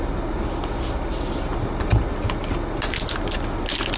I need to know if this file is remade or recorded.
recorded